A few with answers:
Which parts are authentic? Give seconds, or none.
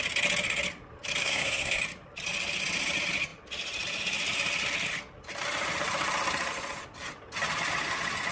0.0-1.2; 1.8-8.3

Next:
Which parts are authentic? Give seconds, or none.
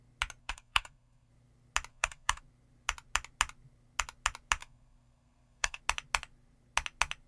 0.0-0.4; 1.3-1.9; 2.4-4.6; 5.8-7.3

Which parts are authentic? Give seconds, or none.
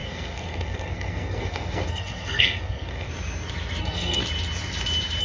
3.1-3.8; 4.2-5.2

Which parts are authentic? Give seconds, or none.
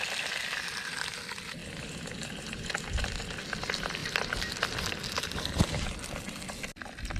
0.0-7.2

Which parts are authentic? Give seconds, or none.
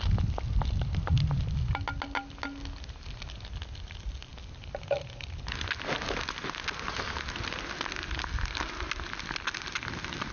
0.0-10.3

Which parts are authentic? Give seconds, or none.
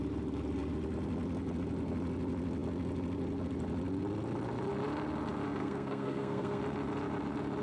0.0-5.6; 6.6-7.6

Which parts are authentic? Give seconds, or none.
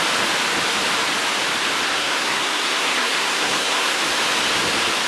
0.0-1.9; 4.0-5.1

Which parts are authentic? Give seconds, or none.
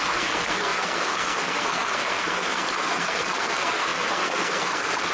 none